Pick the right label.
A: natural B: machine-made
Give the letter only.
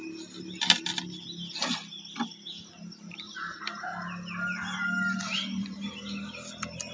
A